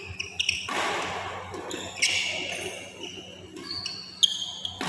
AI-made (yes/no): no